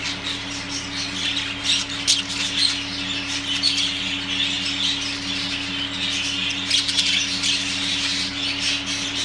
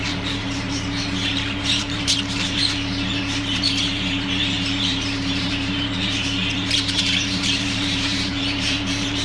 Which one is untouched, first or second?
first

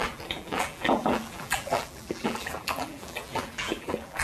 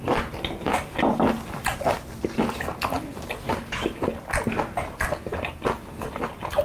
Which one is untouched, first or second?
second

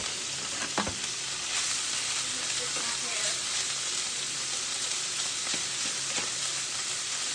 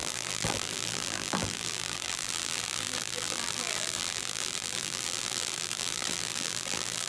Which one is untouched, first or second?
first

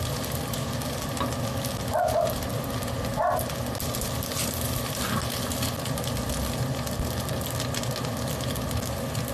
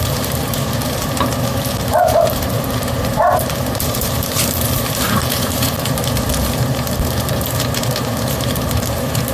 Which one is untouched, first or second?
first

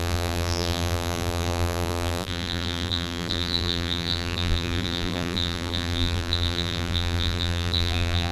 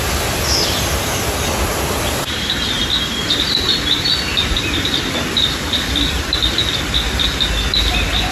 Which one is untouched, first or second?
second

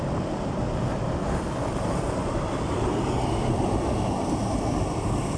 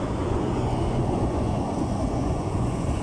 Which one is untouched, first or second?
first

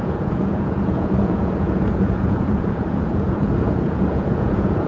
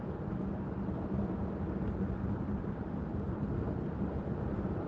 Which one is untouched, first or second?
second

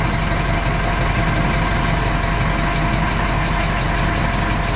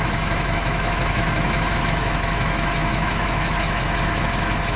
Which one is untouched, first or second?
first